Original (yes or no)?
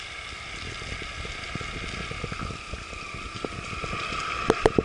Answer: yes